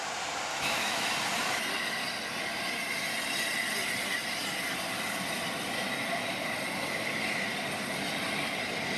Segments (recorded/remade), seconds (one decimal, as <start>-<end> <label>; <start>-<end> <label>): 0.0-0.5 recorded; 0.5-1.1 remade; 1.1-9.0 recorded